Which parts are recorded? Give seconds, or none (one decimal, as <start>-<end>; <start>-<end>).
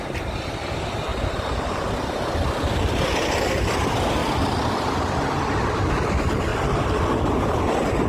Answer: 0.0-8.1